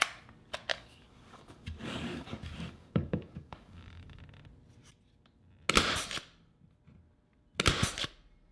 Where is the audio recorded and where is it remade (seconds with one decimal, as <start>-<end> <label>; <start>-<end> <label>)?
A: 0.0-0.7 recorded; 0.7-4.2 remade; 4.2-8.5 recorded